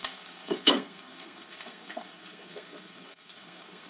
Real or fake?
fake